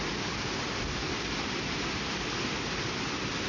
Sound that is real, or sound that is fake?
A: real